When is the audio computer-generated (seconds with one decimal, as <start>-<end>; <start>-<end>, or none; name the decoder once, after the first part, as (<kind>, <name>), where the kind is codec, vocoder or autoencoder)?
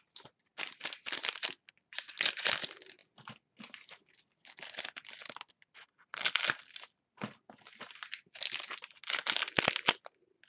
none